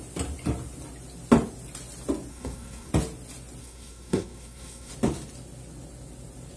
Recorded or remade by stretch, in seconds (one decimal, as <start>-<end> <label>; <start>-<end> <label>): 0.0-2.3 recorded; 2.3-2.9 remade; 2.9-3.6 recorded; 3.6-4.9 remade; 4.9-6.6 recorded